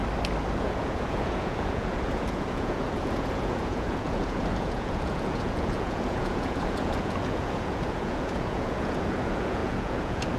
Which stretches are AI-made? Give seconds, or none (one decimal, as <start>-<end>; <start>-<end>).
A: 0.6-10.4